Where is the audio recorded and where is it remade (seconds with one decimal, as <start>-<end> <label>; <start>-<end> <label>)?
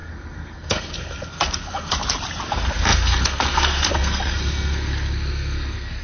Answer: 0.0-1.9 remade; 1.9-2.5 recorded; 2.5-6.0 remade